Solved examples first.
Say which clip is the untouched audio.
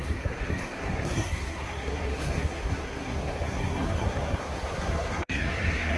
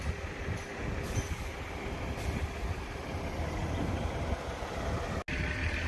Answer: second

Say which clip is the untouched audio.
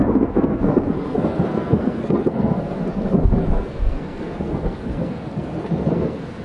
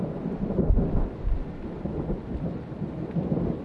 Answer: second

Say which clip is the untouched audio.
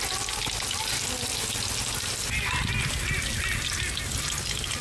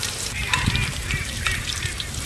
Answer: first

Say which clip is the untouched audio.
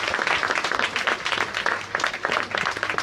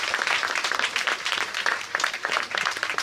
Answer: first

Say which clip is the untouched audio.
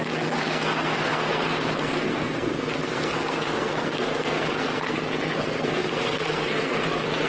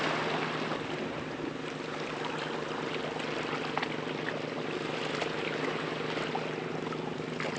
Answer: second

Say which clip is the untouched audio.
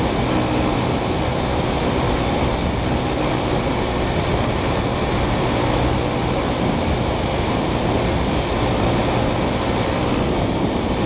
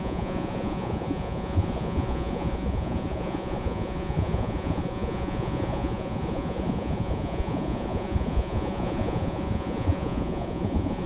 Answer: first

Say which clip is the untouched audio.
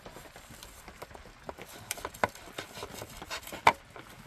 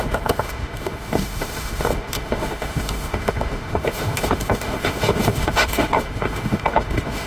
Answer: first